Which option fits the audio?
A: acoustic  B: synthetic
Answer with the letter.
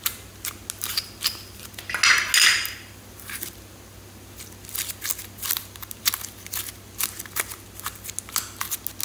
A